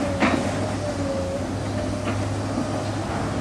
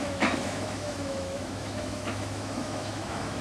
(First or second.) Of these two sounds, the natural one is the first